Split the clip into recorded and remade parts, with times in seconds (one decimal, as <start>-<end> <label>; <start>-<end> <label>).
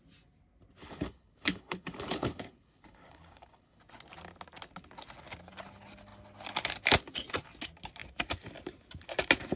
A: 0.0-0.8 recorded; 0.8-3.8 remade; 3.8-9.6 recorded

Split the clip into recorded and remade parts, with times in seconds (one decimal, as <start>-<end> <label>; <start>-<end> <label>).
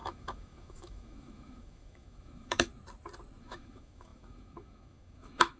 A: 0.0-2.7 remade; 2.7-3.4 recorded; 3.4-5.6 remade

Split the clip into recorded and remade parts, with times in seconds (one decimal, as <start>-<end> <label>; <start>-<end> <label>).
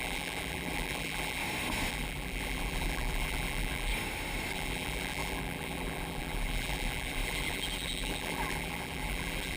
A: 0.0-1.4 remade; 1.4-1.9 recorded; 1.9-3.9 remade; 3.9-4.5 recorded; 4.5-9.6 remade